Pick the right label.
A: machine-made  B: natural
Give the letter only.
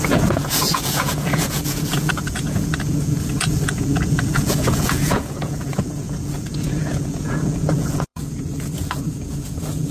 A